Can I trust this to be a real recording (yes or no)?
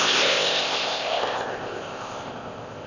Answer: no